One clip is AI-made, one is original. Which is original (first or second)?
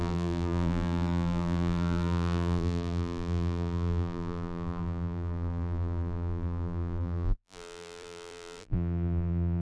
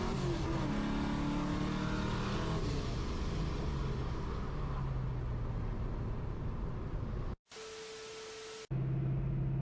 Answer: second